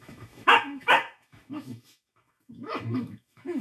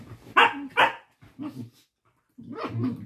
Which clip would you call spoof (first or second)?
first